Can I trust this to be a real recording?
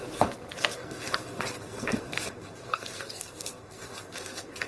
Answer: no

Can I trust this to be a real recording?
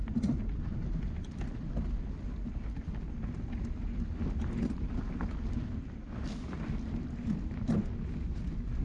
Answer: yes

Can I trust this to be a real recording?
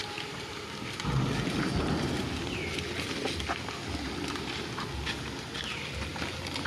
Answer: yes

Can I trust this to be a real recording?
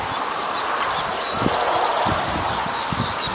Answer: yes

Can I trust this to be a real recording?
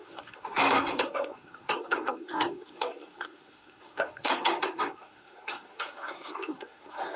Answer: no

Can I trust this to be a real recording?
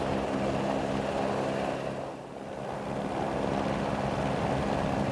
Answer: yes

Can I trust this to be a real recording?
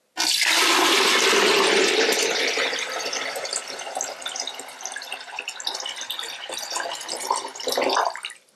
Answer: yes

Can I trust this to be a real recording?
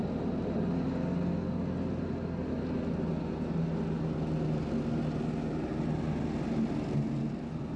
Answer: yes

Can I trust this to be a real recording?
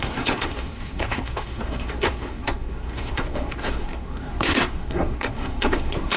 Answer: no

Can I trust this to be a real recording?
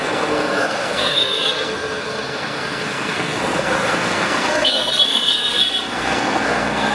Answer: no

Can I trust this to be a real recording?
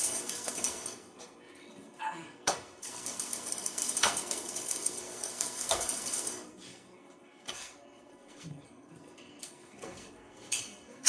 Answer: no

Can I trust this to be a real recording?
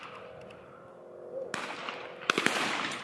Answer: yes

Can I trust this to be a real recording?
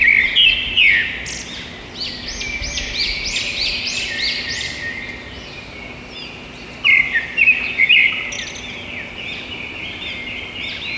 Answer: yes